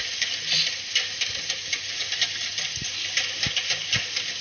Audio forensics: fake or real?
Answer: real